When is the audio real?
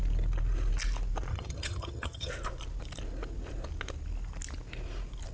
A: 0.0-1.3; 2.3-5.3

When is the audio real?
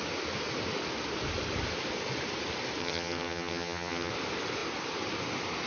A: 0.0-2.8; 4.1-5.7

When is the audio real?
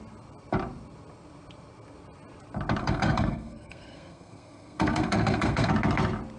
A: 0.0-2.8; 5.7-6.4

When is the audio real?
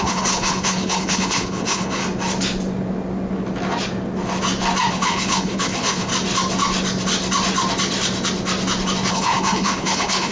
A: 2.0-4.9; 6.1-9.1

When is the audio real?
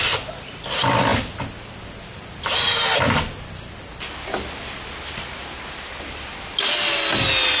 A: 0.0-7.6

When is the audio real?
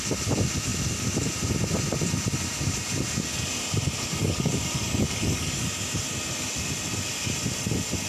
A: 0.0-4.2; 5.7-8.1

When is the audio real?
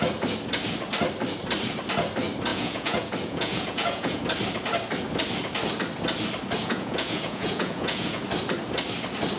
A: 0.0-2.5; 4.2-6.6; 8.2-9.4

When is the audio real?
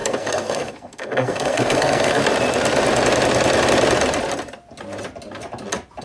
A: 2.2-6.0